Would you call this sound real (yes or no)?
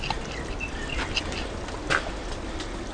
yes